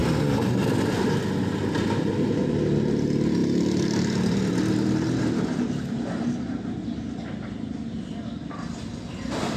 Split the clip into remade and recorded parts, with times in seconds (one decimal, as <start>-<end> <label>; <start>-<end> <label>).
0.0-0.5 remade; 0.5-3.4 recorded; 3.4-5.2 remade; 5.2-9.6 recorded